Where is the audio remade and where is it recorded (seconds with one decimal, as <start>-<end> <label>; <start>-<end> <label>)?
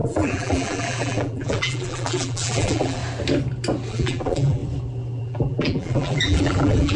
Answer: 0.0-3.0 remade; 3.0-3.9 recorded; 3.9-4.6 remade; 4.6-5.2 recorded; 5.2-7.0 remade